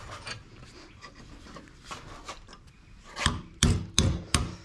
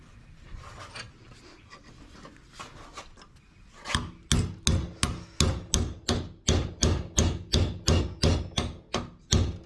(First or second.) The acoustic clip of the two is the second